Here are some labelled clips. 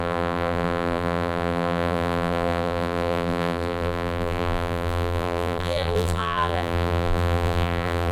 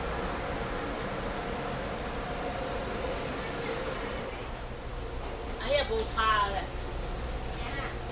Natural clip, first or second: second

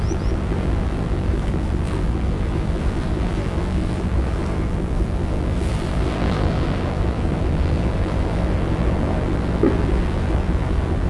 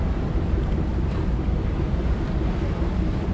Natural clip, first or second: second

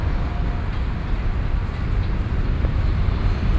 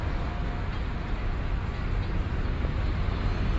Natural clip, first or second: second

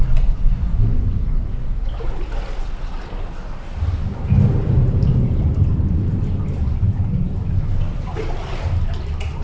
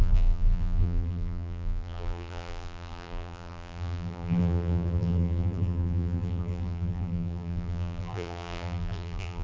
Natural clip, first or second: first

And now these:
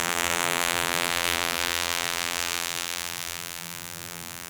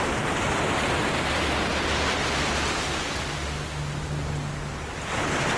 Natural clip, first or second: second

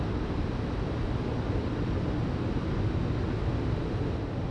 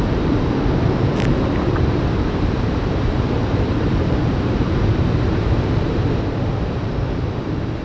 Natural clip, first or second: first